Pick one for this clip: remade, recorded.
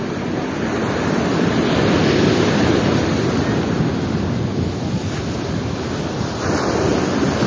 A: recorded